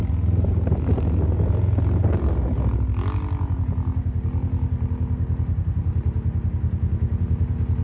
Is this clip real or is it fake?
real